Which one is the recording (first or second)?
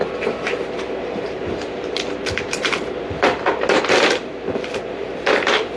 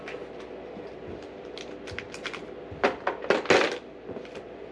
second